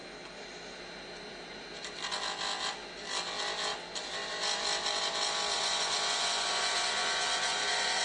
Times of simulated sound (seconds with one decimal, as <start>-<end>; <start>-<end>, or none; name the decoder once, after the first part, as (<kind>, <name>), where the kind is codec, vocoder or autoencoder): 5.5-8.0 (vocoder, Vocos)